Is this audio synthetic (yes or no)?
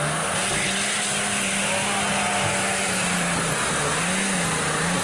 no